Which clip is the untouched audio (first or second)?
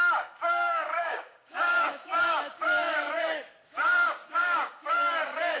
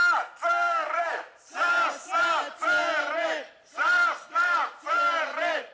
second